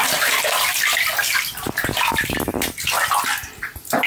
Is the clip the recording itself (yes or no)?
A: yes